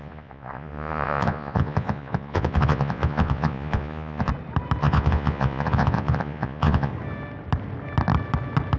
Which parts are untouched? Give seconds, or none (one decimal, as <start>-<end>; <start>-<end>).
4.3-4.8; 6.9-8.8